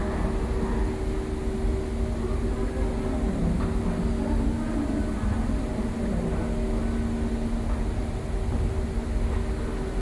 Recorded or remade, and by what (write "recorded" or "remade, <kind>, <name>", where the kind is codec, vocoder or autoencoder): recorded